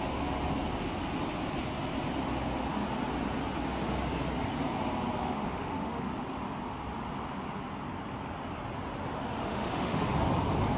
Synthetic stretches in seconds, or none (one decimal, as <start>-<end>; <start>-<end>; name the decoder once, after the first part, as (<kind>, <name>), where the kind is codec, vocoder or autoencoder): 5.2-6.1 (autoencoder, DAC-VAE); 9.4-10.0